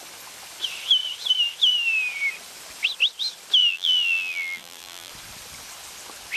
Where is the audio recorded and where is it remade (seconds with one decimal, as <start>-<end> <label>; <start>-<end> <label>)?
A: 0.0-3.6 recorded; 3.6-5.1 remade; 5.1-6.4 recorded